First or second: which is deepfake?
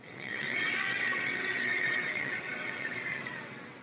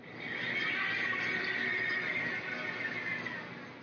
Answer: first